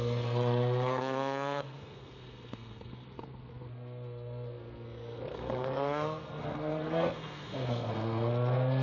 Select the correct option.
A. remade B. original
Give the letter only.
A